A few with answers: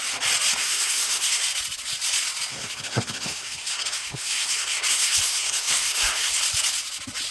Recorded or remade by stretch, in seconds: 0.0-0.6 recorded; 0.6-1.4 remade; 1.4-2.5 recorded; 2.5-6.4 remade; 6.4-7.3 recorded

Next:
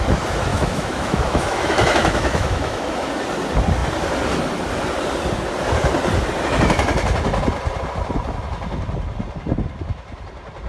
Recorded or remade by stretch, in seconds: 0.0-0.5 recorded; 0.5-3.1 remade; 3.1-10.7 recorded

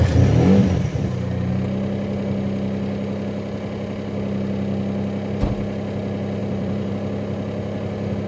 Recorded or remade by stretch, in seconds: 0.0-0.6 recorded; 0.6-1.5 remade; 1.5-6.4 recorded; 6.4-6.9 remade; 6.9-8.3 recorded